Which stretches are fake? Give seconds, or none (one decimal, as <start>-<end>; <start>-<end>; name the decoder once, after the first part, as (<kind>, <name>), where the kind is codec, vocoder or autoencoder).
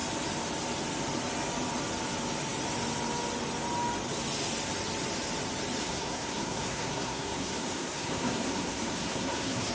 5.8-9.7 (codec, SNAC)